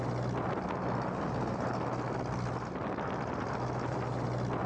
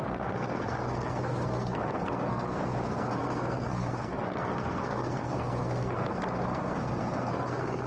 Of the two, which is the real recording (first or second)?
first